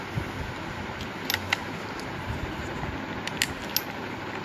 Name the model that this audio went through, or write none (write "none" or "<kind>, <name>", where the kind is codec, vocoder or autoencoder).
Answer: none